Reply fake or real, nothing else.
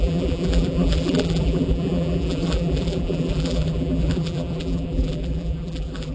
fake